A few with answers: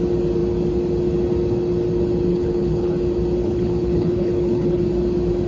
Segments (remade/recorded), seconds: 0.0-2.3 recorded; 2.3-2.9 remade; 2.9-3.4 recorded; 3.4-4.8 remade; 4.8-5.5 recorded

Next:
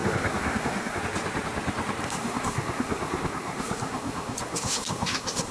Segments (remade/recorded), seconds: 0.0-1.0 remade; 1.0-2.0 recorded; 2.0-5.5 remade

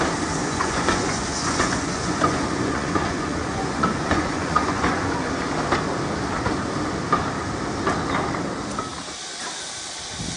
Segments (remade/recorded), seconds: 0.0-0.4 recorded; 0.4-5.3 remade; 5.3-10.4 recorded